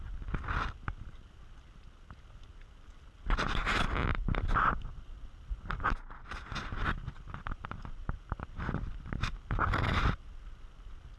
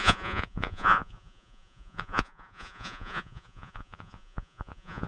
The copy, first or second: second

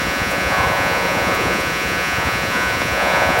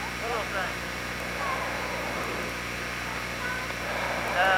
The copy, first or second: first